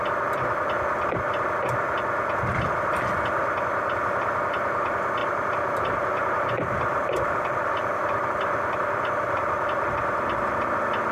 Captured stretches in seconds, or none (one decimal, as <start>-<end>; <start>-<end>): 0.0-5.2; 9.9-11.1